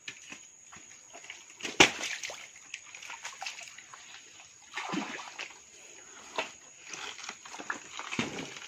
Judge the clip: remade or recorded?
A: recorded